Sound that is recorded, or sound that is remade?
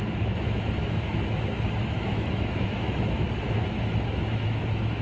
remade